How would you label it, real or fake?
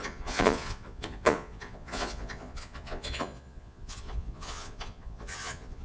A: fake